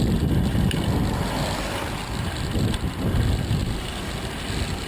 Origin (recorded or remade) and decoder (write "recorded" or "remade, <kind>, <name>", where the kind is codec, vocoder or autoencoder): recorded